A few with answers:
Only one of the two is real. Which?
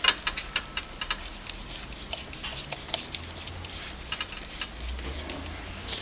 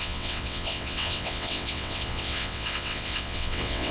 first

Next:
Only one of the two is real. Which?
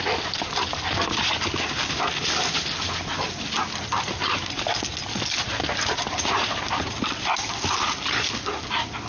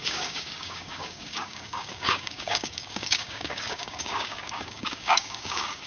first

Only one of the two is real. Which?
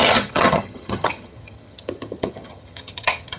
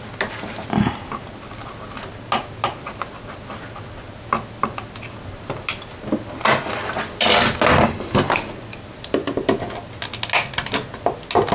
second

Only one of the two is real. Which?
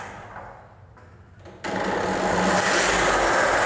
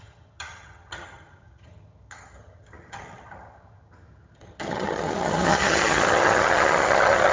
first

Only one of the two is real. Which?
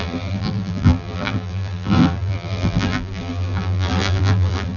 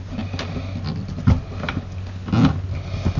second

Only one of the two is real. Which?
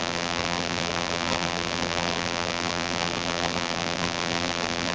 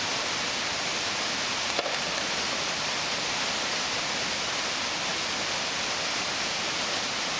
second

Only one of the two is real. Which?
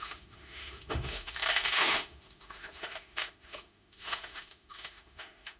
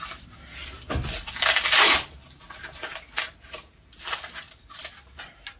second